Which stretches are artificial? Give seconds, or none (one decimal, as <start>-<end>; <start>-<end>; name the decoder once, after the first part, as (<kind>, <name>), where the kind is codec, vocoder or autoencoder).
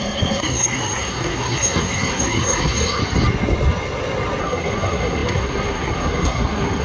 0.0-3.0 (codec, SNAC); 4.4-6.8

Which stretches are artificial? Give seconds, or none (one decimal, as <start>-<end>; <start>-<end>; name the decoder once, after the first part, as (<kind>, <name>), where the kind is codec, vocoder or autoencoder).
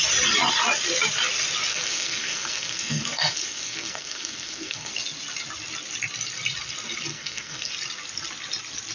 1.7-4.9 (codec, SNAC); 7.1-7.7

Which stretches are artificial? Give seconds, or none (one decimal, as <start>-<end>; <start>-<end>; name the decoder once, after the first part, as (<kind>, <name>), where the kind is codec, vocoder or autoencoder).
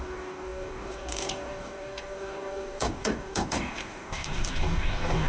0.0-5.3 (codec, DAC)